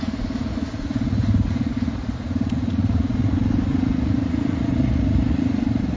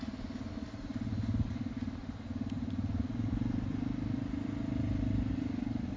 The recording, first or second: second